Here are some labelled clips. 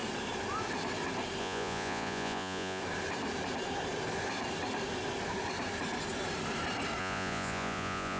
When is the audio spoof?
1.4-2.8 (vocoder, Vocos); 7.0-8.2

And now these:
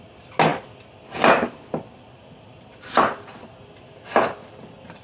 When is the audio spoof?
none

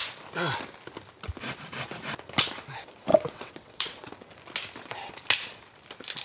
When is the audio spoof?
3.1-4.1 (vocoder, WaveNeXt)

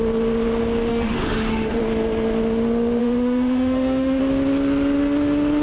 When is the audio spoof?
0.9-1.8 (autoencoder, DAC-VAE); 3.0-4.2

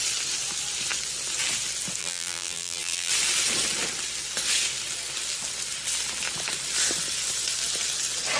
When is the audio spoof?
2.0-3.1 (vocoder, BigVGAN v2)

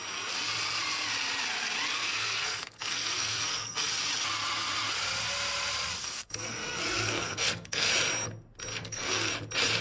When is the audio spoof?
2.0-3.9 (codec, SNAC); 6.0-7.9; 8.7-9.3